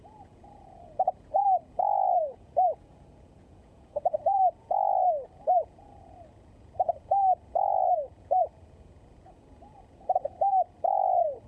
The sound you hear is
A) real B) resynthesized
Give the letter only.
B